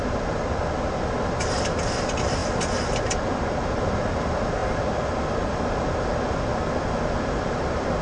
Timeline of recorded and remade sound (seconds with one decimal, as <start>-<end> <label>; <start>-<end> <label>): 0.0-8.0 recorded